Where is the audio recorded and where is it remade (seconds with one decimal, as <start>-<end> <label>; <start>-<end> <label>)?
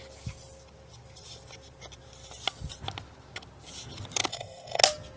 0.0-4.3 recorded; 4.3-4.8 remade; 4.8-5.2 recorded